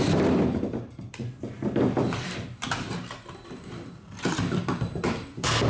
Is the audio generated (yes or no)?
yes